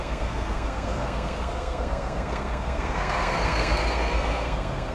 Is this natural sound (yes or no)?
no